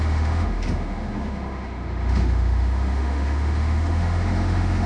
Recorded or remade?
remade